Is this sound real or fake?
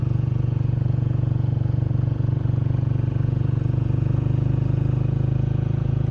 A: fake